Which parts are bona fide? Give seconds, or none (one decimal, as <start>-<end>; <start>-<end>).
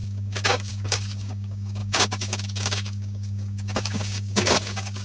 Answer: none